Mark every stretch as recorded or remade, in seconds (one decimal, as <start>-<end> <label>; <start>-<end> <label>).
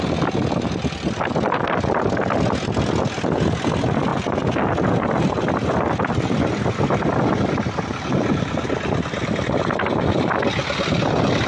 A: 0.0-11.5 recorded